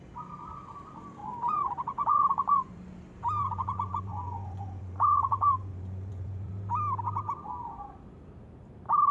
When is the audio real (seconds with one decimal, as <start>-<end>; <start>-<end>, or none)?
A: 0.0-1.2; 2.8-3.4; 6.5-9.1